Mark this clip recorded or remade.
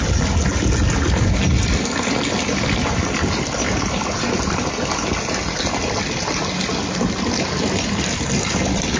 recorded